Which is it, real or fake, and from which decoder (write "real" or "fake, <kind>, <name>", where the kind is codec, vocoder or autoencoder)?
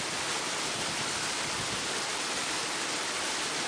real